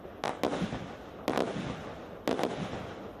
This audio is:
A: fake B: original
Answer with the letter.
B